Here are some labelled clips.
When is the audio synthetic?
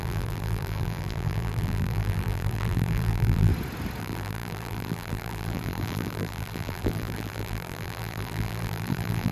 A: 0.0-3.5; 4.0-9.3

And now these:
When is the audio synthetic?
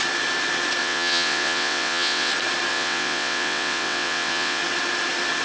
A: 0.8-2.3; 2.7-4.6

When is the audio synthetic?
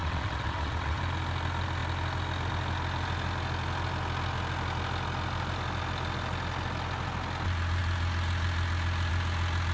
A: 0.0-1.0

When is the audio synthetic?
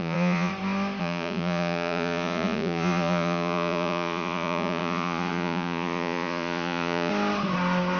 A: 0.0-0.5; 1.0-7.1